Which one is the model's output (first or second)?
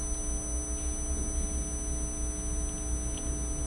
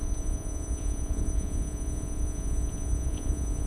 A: second